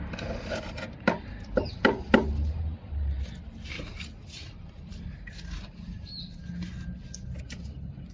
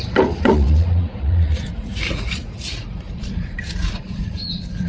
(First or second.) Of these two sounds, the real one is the first